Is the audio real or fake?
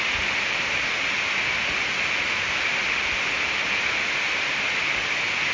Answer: real